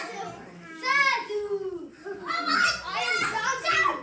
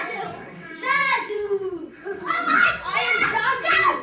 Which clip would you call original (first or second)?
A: first